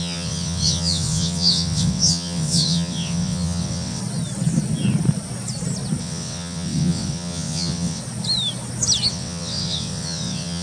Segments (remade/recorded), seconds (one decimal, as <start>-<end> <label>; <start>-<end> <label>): 0.0-4.0 remade; 4.0-6.0 recorded; 6.0-8.0 remade; 8.0-9.1 recorded; 9.1-10.6 remade